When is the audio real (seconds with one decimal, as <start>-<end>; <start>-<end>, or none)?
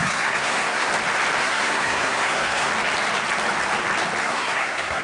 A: 0.9-1.4; 2.7-4.2